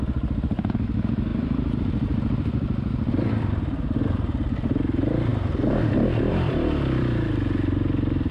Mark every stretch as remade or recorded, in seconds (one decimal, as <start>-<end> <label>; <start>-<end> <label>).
0.0-5.3 remade; 5.3-6.3 recorded; 6.3-8.3 remade